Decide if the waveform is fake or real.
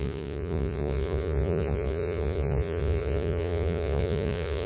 fake